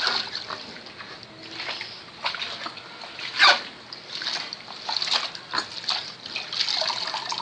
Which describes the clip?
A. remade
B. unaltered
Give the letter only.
B